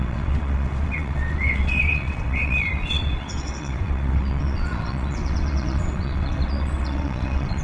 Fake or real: fake